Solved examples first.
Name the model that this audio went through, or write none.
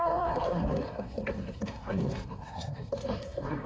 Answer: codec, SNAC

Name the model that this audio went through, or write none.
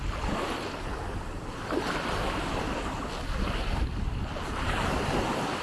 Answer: none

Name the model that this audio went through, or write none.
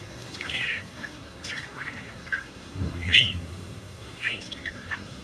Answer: codec, SNAC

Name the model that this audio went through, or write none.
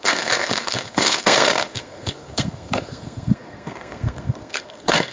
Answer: codec, SNAC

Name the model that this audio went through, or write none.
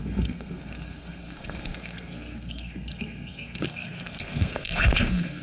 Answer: codec, SNAC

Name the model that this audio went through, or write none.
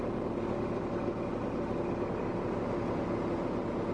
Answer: none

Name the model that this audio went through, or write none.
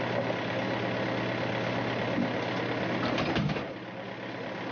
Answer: none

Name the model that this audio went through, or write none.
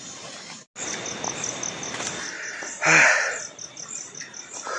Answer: none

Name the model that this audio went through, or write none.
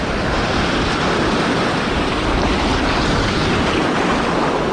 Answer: none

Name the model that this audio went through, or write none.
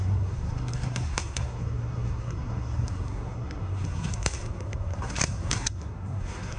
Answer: codec, SNAC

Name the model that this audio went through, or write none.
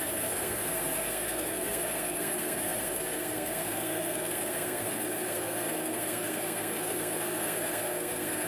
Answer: codec, SNAC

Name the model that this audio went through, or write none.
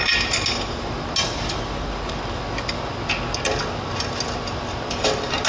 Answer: none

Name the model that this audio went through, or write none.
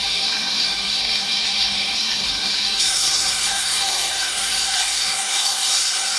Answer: codec, SNAC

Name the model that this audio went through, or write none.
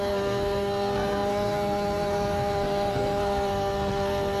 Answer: codec, SNAC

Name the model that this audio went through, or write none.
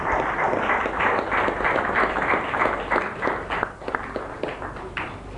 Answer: none